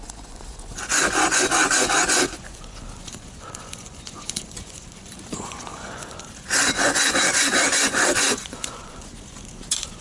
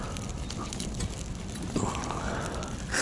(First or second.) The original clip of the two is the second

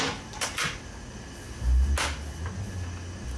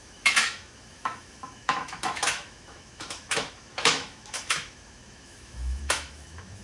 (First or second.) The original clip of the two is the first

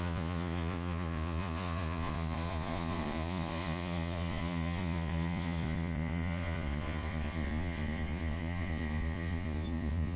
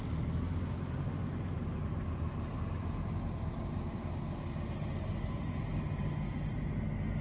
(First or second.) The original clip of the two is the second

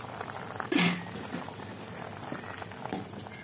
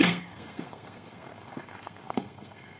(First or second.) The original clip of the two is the first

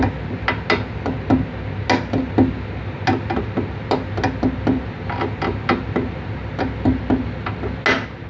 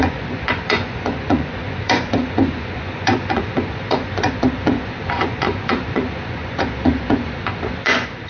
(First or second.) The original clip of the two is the first